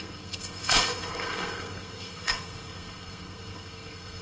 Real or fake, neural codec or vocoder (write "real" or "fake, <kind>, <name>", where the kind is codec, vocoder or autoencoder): fake, codec, SNAC